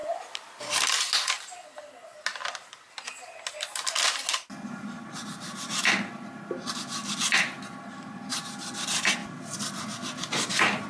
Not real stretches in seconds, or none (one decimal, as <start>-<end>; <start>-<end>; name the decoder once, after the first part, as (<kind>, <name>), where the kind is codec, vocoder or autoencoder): none